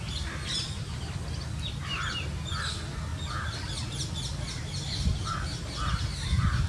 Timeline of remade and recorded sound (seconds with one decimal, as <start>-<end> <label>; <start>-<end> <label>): 0.0-6.7 recorded